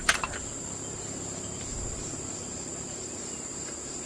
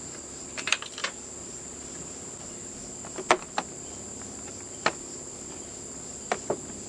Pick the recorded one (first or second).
second